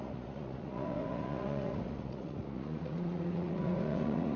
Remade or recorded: remade